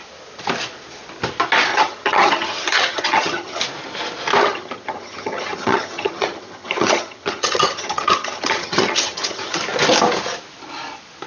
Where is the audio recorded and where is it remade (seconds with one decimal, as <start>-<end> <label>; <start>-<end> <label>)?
0.0-1.7 recorded; 1.7-3.6 remade; 3.6-4.4 recorded; 4.4-9.6 remade; 9.6-11.3 recorded